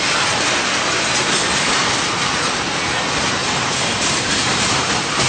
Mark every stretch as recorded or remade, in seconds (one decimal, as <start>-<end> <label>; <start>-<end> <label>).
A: 0.0-3.4 recorded; 3.4-5.3 remade